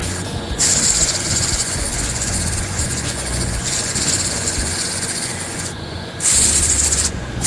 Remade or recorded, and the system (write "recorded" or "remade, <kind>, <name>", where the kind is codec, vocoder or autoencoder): remade, vocoder, Vocos